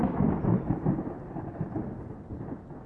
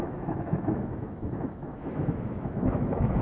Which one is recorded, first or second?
first